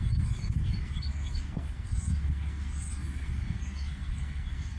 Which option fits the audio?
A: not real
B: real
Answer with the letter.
A